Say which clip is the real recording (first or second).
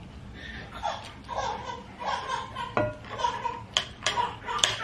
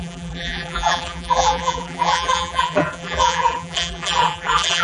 first